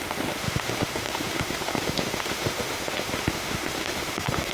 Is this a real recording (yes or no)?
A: no